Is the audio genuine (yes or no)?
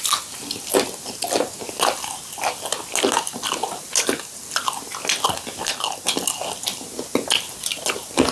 yes